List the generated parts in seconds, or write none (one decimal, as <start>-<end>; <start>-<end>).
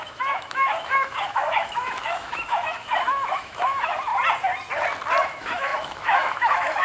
0.0-4.1; 5.2-6.8